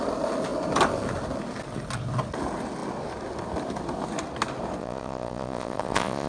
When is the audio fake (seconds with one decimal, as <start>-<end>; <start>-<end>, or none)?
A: 4.8-6.3